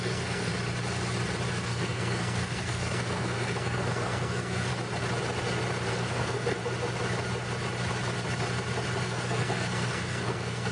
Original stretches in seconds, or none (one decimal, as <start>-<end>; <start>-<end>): 0.5-1.5; 4.7-5.9; 6.6-9.0